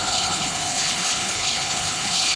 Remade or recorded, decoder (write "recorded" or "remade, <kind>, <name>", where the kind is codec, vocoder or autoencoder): remade, codec, HILCodec